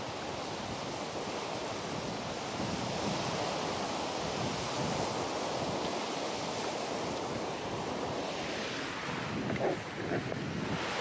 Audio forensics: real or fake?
real